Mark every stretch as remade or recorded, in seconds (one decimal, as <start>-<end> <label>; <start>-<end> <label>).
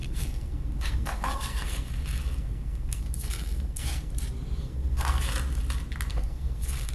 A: 0.0-4.1 remade; 4.1-4.6 recorded; 4.6-5.2 remade; 5.2-6.1 recorded; 6.1-6.9 remade